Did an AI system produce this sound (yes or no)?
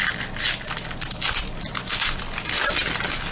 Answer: no